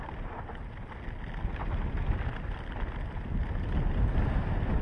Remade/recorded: recorded